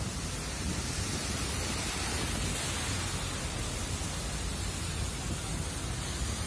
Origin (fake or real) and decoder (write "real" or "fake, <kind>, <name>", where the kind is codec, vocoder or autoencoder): real